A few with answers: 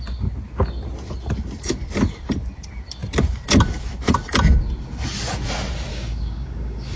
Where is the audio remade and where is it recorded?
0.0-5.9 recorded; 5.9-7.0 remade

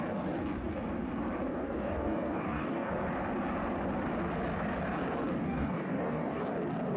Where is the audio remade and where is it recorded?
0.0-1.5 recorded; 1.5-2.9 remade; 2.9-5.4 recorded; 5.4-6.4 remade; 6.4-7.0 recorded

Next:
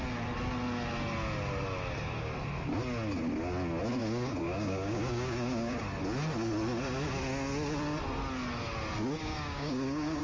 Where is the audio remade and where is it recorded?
0.0-4.0 recorded; 4.0-5.8 remade; 5.8-9.2 recorded; 9.2-10.2 remade

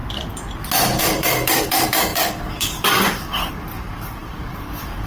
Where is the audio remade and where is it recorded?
0.0-1.0 recorded; 1.0-5.1 remade